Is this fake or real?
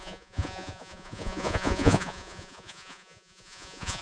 fake